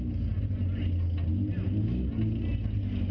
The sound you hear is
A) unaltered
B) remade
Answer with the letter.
A